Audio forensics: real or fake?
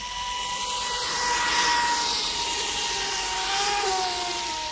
real